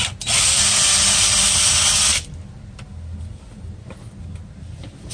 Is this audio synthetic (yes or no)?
no